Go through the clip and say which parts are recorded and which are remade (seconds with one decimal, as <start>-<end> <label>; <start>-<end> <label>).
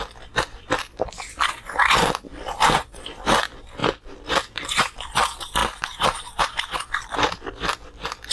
0.0-5.6 recorded; 5.6-6.4 remade; 6.4-8.3 recorded